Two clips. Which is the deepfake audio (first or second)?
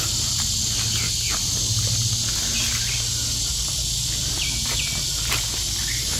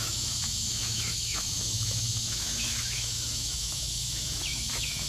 second